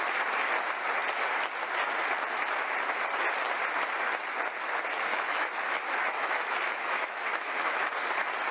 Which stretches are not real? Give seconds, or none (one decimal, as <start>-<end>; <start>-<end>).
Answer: 5.1-7.8